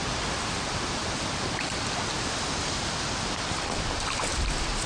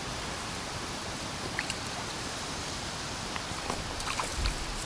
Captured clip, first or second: first